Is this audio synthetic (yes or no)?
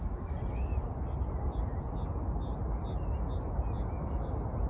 no